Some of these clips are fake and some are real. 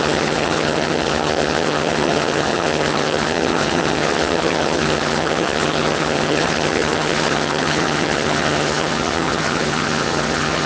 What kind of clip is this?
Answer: fake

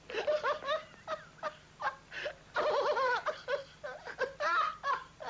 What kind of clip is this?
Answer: fake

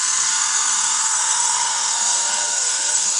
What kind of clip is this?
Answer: fake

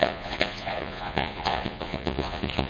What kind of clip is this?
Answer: fake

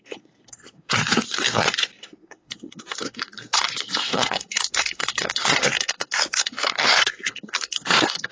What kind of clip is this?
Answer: fake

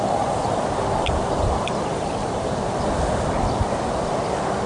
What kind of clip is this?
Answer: real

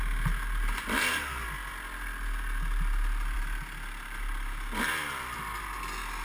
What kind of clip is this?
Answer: real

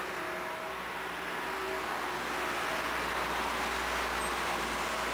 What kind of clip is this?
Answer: real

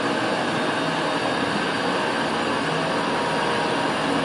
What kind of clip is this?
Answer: real